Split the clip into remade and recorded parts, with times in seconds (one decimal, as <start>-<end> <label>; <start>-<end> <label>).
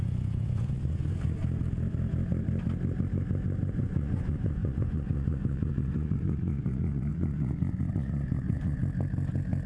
0.0-1.4 remade; 1.4-3.8 recorded; 3.8-8.8 remade; 8.8-9.7 recorded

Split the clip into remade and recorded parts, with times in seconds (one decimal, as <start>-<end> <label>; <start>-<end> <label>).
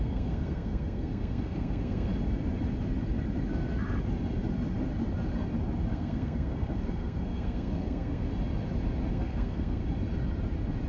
0.0-2.1 remade; 2.1-5.9 recorded; 5.9-8.3 remade; 8.3-9.1 recorded; 9.1-9.8 remade; 9.8-10.9 recorded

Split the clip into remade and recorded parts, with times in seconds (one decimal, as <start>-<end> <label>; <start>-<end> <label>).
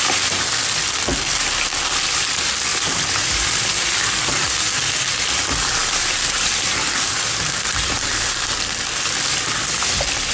0.0-2.7 recorded; 2.7-4.6 remade; 4.6-5.8 recorded; 5.8-8.7 remade; 8.7-10.3 recorded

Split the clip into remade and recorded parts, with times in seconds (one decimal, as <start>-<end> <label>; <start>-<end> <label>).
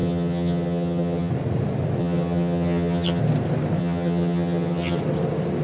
0.0-1.3 remade; 1.3-2.0 recorded; 2.0-3.2 remade; 3.2-3.8 recorded; 3.8-5.0 remade; 5.0-5.6 recorded